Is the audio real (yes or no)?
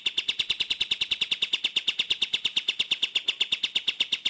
yes